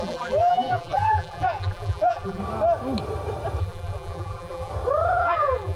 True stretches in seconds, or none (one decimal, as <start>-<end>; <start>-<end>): 2.4-3.6; 4.7-5.2